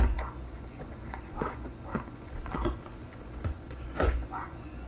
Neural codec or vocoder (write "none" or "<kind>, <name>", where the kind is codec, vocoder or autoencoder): vocoder, Vocos